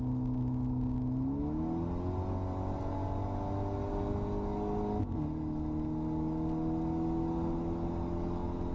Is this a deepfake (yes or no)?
no